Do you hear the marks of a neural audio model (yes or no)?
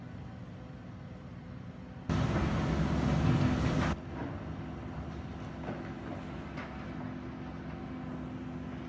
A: no